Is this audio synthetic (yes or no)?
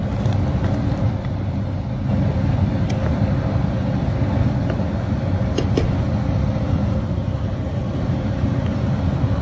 no